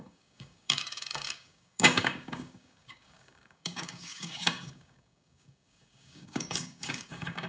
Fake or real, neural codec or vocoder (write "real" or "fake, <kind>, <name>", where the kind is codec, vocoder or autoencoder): fake, codec, DAC